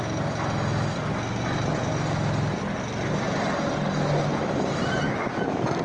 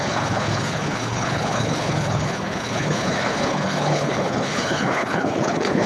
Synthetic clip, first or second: second